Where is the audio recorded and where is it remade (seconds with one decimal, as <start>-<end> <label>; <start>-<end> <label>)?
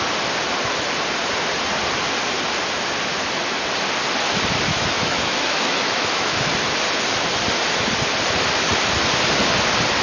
0.0-4.7 recorded; 4.7-6.5 remade; 6.5-10.0 recorded